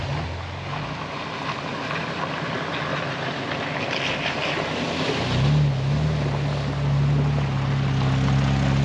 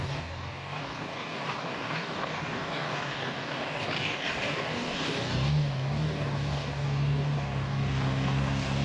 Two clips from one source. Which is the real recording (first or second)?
first